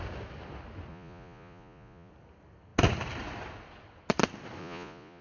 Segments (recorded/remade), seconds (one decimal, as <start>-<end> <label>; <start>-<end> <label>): 0.0-0.9 recorded; 0.9-2.1 remade; 2.1-4.6 recorded; 4.6-5.2 remade